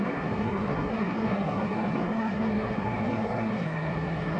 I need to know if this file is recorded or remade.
remade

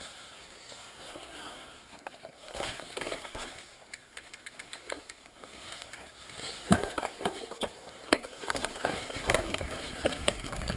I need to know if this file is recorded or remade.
remade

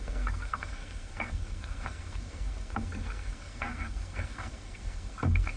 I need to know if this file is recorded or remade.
remade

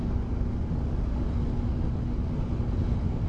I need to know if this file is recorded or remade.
recorded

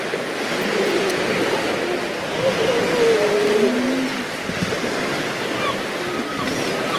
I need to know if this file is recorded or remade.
recorded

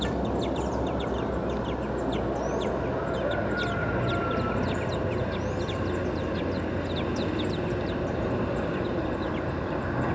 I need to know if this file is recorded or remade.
recorded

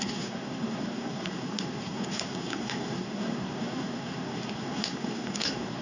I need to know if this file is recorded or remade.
remade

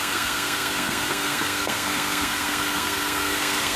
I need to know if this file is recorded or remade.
remade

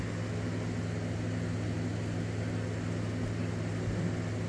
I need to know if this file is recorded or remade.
recorded